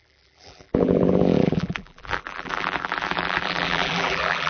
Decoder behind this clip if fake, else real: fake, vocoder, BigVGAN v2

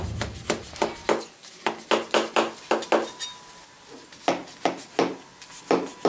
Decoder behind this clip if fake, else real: real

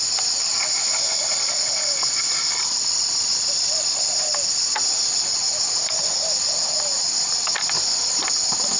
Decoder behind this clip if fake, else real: real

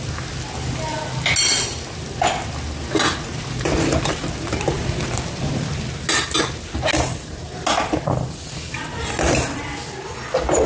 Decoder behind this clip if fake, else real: real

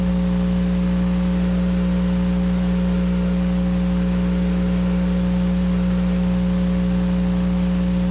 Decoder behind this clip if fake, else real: real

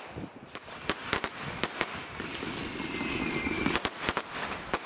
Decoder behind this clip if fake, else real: real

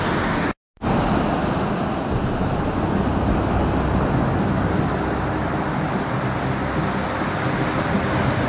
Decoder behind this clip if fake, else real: real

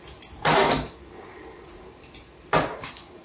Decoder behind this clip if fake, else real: fake, vocoder, BigVGAN v2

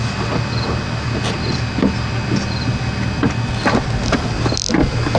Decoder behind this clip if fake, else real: real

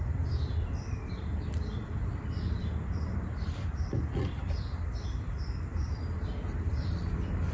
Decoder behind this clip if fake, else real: fake, vocoder, BigVGAN v2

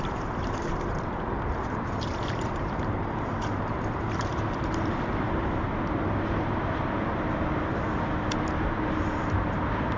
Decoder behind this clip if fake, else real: fake, vocoder, BigVGAN v2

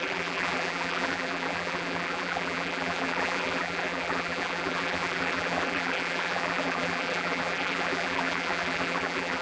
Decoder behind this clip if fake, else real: fake, vocoder, BigVGAN v2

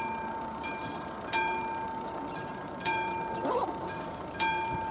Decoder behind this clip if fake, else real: fake, vocoder, BigVGAN v2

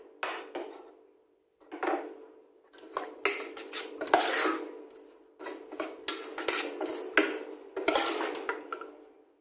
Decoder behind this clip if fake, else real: real